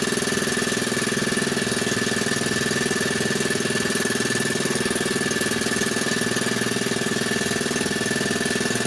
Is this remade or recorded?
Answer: recorded